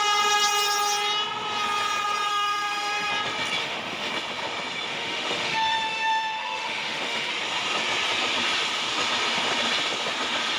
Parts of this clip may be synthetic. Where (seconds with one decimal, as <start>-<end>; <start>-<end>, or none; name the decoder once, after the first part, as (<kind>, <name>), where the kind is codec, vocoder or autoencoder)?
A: 2.3-3.1 (autoencoder, DAC-VAE); 3.6-4.1; 4.9-7.3